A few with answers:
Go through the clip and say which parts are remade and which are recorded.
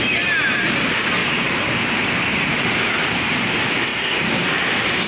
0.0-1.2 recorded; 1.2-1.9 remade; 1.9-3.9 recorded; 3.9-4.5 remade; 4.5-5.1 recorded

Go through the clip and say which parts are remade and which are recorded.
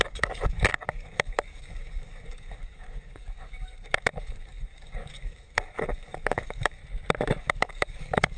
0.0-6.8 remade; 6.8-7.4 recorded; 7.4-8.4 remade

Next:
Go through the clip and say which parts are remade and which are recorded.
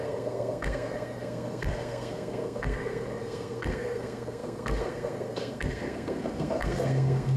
0.0-7.4 remade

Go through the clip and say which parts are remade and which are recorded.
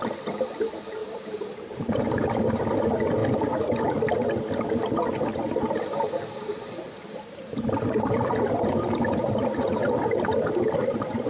0.0-1.0 recorded; 1.0-2.6 remade; 2.6-6.4 recorded; 6.4-10.0 remade; 10.0-11.3 recorded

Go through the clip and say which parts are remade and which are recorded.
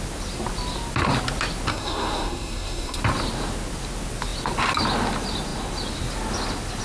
0.0-1.7 recorded; 1.7-3.0 remade; 3.0-6.8 recorded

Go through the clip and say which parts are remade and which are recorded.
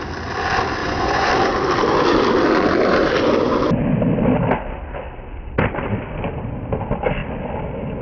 0.0-0.8 recorded; 0.8-1.3 remade; 1.3-8.0 recorded